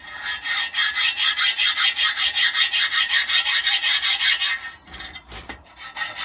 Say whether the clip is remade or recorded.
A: recorded